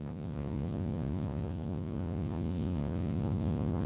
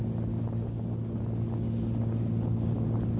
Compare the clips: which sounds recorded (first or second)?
second